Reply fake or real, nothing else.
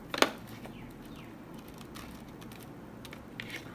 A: real